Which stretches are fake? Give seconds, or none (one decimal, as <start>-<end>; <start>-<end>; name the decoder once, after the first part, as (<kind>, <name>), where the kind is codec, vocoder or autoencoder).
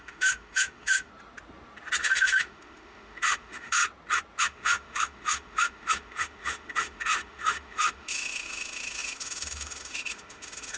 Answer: 0.0-1.1 (autoencoder, DAC-VAE); 2.0-3.8; 4.4-10.8